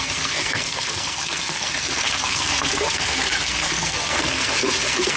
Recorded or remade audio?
remade